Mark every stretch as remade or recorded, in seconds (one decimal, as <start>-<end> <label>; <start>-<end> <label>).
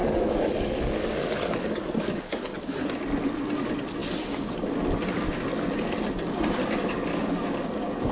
0.0-2.5 remade; 2.5-6.6 recorded; 6.6-8.1 remade